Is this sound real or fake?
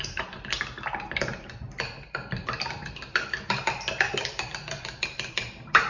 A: real